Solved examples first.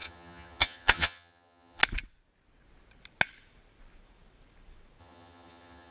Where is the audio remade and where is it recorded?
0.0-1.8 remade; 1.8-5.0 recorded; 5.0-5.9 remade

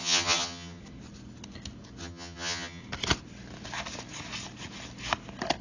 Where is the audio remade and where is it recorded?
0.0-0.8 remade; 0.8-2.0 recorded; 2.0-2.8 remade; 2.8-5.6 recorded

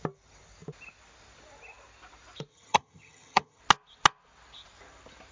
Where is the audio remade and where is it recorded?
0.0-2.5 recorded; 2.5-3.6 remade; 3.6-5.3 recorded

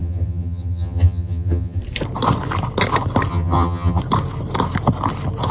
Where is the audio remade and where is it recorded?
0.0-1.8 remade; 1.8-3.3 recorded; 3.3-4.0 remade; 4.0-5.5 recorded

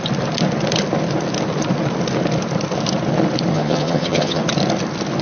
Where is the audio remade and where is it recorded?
0.0-3.5 recorded; 3.5-4.4 remade; 4.4-5.2 recorded

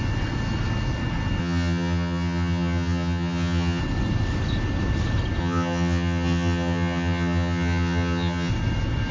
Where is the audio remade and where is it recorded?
0.0-1.4 recorded; 1.4-3.8 remade; 3.8-5.4 recorded; 5.4-8.5 remade; 8.5-9.1 recorded

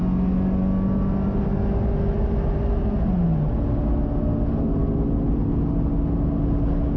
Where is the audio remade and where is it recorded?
0.0-7.0 recorded

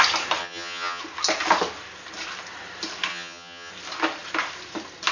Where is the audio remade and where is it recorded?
0.0-0.4 recorded; 0.4-1.0 remade; 1.0-3.1 recorded; 3.1-3.7 remade; 3.7-5.1 recorded